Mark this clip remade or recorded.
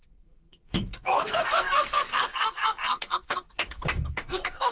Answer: remade